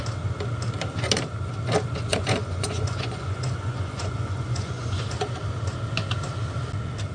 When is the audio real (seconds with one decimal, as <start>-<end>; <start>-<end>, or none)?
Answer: 0.0-2.1; 5.0-7.1